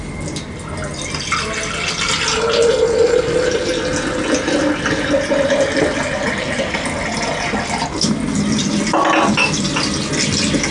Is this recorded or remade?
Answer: recorded